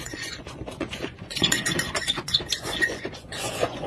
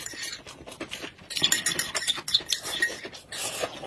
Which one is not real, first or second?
first